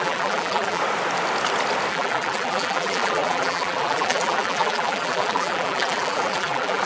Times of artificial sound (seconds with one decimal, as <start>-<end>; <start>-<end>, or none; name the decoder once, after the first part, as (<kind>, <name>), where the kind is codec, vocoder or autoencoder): 0.0-0.8 (vocoder, BigVGAN v2); 1.9-6.9